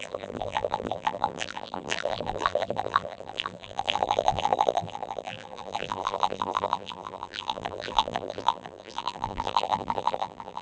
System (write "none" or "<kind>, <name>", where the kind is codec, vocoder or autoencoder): vocoder, BigVGAN v2